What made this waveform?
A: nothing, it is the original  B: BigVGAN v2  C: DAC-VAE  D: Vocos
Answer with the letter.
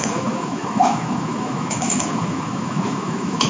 C